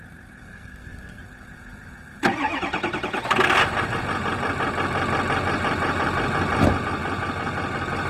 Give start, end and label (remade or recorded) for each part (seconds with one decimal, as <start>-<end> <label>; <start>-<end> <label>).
0.0-0.5 recorded; 0.5-1.2 remade; 1.2-8.1 recorded

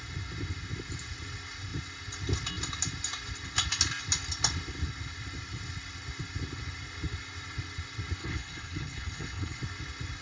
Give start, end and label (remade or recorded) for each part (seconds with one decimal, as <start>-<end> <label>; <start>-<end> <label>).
0.0-8.2 recorded; 8.2-9.6 remade; 9.6-10.2 recorded

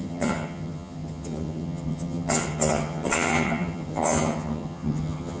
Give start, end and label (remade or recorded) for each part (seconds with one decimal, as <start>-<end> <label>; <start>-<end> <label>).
0.0-5.4 remade

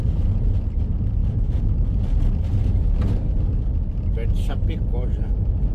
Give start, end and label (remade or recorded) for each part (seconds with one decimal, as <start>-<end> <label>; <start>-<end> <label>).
0.0-5.7 recorded